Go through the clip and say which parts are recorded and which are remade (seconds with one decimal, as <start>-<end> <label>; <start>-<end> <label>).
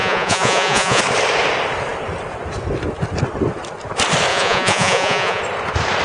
0.0-1.0 remade; 1.0-4.3 recorded; 4.3-5.4 remade; 5.4-6.0 recorded